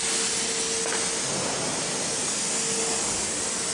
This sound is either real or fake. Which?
real